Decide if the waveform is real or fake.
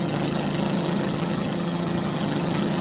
fake